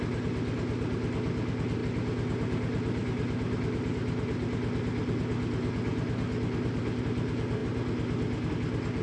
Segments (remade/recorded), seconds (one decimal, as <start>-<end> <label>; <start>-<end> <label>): 0.0-9.0 recorded